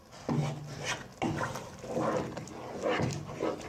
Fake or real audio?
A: real